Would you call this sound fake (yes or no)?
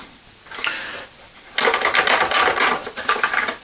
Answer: no